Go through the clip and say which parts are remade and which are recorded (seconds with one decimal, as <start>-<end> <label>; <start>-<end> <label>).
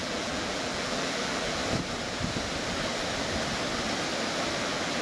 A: 0.0-1.6 remade; 1.6-4.6 recorded; 4.6-5.0 remade